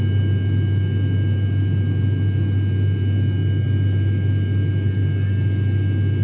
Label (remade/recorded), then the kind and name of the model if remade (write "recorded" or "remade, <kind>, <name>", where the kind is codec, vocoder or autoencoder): recorded